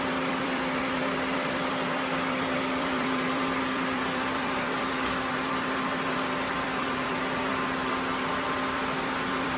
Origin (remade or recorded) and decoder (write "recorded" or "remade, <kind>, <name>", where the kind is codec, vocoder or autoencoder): remade, vocoder, BigVGAN v2